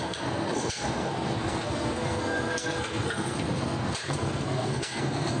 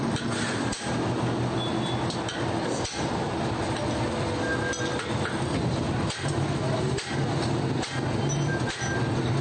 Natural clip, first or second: second